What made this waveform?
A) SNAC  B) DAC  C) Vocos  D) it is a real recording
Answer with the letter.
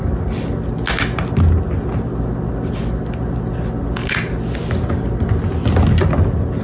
D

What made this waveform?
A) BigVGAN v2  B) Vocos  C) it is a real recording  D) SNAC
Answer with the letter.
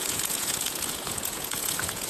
B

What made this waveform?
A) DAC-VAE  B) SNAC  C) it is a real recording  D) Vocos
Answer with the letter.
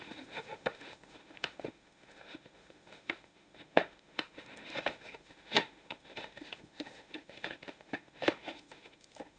A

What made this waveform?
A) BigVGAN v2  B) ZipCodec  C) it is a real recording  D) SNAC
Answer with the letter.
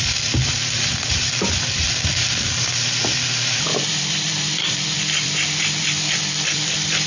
A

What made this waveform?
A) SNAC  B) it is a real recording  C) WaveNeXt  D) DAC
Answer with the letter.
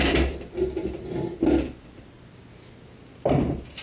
B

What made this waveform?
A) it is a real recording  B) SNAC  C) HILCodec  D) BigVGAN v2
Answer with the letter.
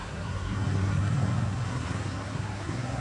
B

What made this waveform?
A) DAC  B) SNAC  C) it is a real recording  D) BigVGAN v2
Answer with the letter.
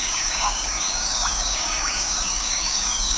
A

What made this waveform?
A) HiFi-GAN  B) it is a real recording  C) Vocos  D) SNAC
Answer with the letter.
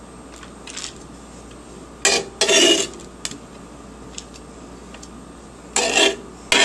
B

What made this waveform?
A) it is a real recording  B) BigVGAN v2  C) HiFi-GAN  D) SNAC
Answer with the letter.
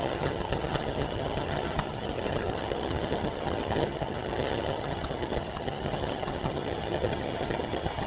C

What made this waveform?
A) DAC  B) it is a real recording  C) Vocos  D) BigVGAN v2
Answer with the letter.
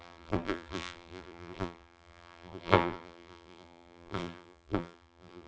D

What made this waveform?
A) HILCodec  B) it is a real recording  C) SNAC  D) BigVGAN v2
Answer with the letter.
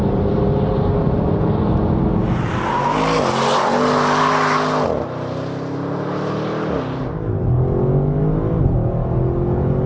B